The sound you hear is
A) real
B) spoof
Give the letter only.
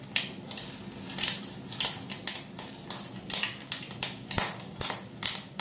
A